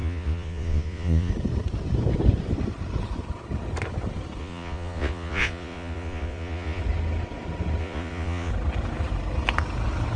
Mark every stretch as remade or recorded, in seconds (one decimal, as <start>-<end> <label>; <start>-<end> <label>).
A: 0.0-1.3 remade; 1.3-4.4 recorded; 4.4-6.8 remade; 6.8-7.8 recorded; 7.8-8.5 remade; 8.5-10.2 recorded